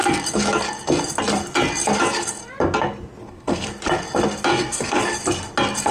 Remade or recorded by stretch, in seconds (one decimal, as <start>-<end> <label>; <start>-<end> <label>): 0.0-3.2 recorded; 3.2-3.7 remade; 3.7-4.5 recorded; 4.5-5.0 remade; 5.0-5.9 recorded